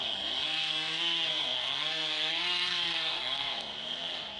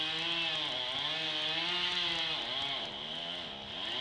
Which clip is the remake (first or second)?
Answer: first